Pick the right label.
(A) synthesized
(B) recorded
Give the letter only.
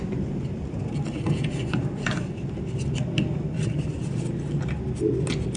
B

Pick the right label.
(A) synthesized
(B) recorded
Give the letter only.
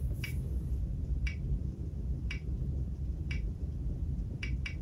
A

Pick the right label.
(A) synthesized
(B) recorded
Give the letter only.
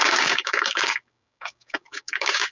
A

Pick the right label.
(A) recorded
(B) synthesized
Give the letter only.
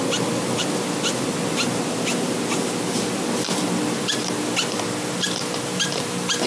A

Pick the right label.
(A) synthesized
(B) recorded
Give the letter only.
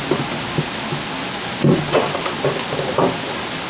B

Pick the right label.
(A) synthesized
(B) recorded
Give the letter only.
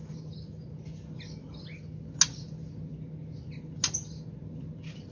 B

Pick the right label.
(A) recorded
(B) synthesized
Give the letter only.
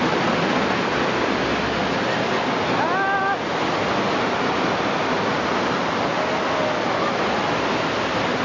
A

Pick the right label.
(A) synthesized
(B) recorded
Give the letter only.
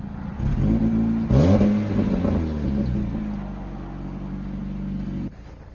B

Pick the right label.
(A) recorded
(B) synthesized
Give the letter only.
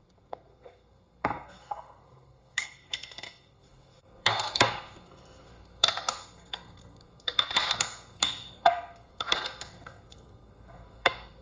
B